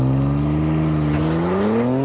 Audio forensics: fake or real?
real